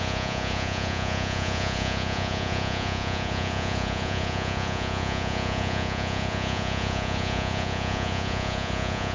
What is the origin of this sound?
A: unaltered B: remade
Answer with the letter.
B